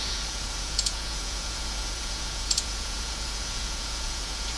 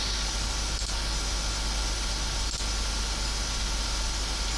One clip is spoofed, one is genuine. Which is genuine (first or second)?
second